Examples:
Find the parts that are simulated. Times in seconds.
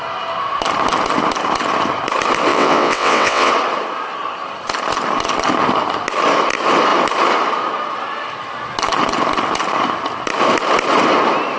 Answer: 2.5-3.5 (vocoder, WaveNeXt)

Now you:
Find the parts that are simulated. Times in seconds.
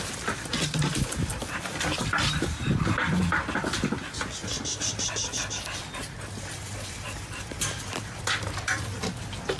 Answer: 1.3-3.2 (vocoder, BigVGAN v2); 4.4-9.6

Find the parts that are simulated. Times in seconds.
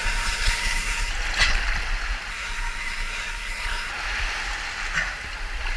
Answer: 0.0-1.1 (codec, SNAC); 2.3-3.9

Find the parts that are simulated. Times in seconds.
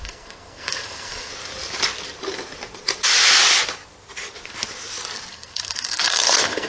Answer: 0.0-1.3 (codec, SNAC); 5.3-6.7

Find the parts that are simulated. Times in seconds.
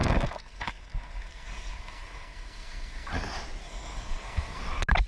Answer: 0.0-3.1 (codec, SNAC); 3.6-4.6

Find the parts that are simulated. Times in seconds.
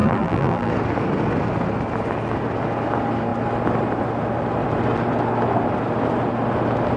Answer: 0.0-0.7 (vocoder, BigVGAN v2)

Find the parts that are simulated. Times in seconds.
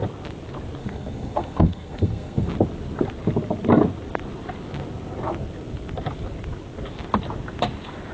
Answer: 0.8-2.5 (codec, SNAC)